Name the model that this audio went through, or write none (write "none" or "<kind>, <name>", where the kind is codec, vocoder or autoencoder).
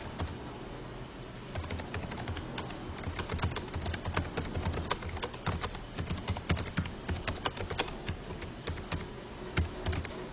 none